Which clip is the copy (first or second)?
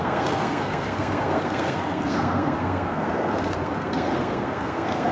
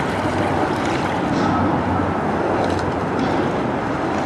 first